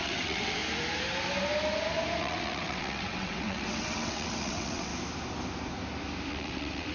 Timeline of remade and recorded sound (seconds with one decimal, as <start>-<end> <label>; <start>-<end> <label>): 0.0-0.6 remade; 0.6-2.2 recorded; 2.2-4.9 remade; 4.9-6.3 recorded; 6.3-6.9 remade